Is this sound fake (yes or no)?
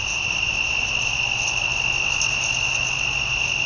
no